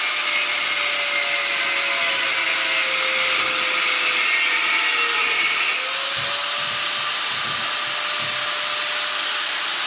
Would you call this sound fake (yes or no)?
no